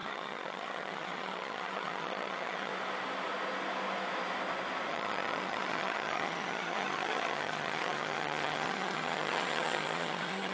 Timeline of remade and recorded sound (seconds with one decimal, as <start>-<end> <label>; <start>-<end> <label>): 0.0-2.7 remade; 2.7-4.9 recorded; 4.9-10.5 remade